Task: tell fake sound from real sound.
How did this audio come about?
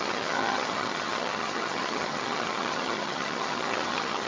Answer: fake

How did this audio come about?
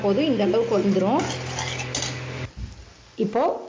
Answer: real